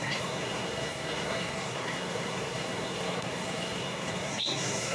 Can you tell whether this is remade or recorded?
remade